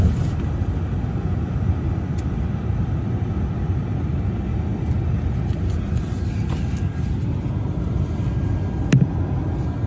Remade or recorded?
recorded